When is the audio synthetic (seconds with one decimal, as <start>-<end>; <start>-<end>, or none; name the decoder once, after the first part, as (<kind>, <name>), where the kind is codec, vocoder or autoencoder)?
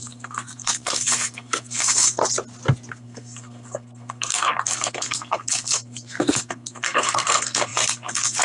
0.0-2.2 (codec, SNAC); 2.9-8.4